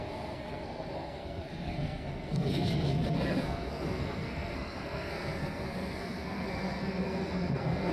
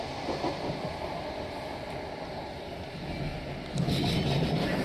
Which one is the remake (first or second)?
first